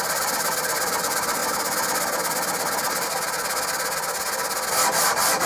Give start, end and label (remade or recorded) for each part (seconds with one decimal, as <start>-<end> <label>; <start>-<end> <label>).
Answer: 0.0-1.4 remade; 1.4-4.7 recorded; 4.7-5.5 remade